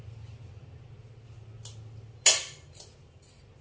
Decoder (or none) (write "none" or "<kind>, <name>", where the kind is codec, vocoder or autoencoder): none